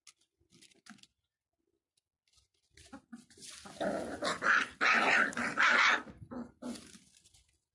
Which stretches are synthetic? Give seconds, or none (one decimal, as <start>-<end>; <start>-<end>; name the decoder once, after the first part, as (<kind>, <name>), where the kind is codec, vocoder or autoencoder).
none